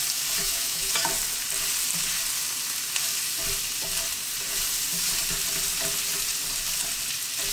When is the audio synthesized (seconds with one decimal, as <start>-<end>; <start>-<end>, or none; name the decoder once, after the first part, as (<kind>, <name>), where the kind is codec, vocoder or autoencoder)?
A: 0.4-0.9 (autoencoder, DAC-VAE)